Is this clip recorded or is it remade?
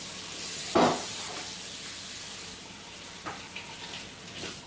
recorded